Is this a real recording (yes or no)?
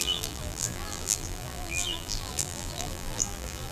no